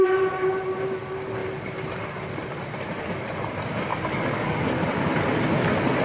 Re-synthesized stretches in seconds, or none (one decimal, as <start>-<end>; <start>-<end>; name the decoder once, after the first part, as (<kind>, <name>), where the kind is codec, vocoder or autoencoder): 3.9-4.7 (codec, DAC)